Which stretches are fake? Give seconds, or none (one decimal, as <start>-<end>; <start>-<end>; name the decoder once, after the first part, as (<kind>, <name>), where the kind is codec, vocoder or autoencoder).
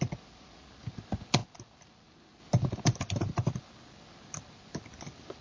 none